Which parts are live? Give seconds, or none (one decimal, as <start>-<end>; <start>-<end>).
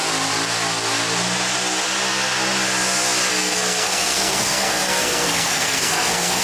0.0-3.3